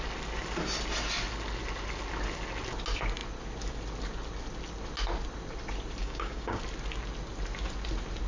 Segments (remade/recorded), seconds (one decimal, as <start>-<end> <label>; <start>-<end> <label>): 0.0-6.0 recorded; 6.0-6.6 remade; 6.6-8.3 recorded